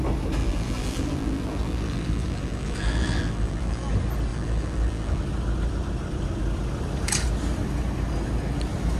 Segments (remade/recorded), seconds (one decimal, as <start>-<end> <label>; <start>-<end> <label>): 0.0-0.4 recorded; 0.4-3.9 remade; 3.9-4.3 recorded; 4.3-5.2 remade; 5.2-9.0 recorded